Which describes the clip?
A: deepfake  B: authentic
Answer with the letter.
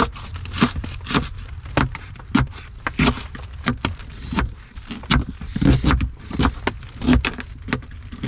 B